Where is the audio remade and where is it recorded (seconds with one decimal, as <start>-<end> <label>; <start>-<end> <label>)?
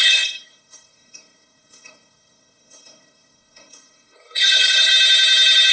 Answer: 0.0-4.9 remade; 4.9-5.7 recorded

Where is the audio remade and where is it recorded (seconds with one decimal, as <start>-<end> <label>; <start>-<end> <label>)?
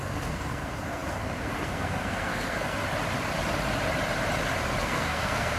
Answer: 0.0-2.8 remade; 2.8-4.8 recorded; 4.8-5.6 remade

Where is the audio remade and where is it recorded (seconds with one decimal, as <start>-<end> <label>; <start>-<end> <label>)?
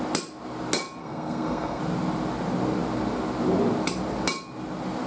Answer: 0.0-1.0 recorded; 1.0-1.8 remade; 1.8-5.1 recorded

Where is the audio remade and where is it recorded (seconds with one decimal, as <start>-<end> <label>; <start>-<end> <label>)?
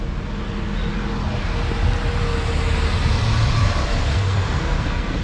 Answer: 0.0-4.0 recorded; 4.0-5.2 remade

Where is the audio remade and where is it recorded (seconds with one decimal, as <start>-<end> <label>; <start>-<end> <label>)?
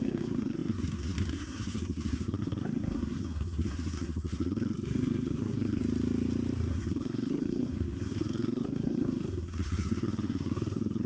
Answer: 0.0-5.8 remade; 5.8-6.7 recorded; 6.7-11.1 remade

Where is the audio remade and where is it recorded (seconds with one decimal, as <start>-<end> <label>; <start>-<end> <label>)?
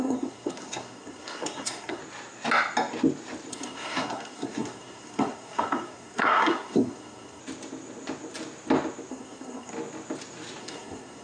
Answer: 0.0-2.0 remade; 2.0-3.5 recorded; 3.5-7.4 remade; 7.4-9.1 recorded; 9.1-9.7 remade; 9.7-10.6 recorded; 10.6-11.2 remade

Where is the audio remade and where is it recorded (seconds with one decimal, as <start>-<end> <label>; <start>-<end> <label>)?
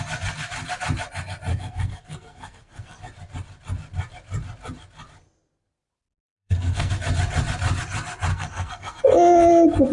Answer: 0.0-1.5 recorded; 1.5-3.0 remade; 3.0-6.2 recorded; 6.2-6.9 remade; 6.9-8.3 recorded; 8.3-9.0 remade; 9.0-9.9 recorded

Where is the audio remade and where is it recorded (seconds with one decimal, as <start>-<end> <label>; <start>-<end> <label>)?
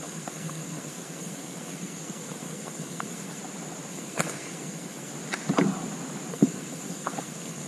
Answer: 0.0-3.4 remade; 3.4-3.9 recorded; 3.9-5.1 remade; 5.1-6.3 recorded; 6.3-7.7 remade